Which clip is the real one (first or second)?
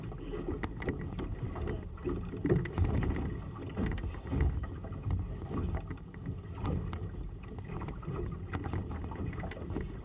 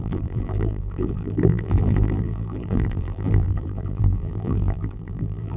first